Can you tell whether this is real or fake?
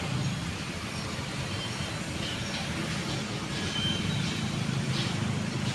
fake